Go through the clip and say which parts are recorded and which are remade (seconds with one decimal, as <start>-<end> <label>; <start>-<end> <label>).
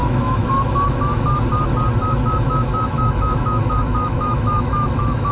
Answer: 0.0-1.2 remade; 1.2-2.0 recorded; 2.0-5.3 remade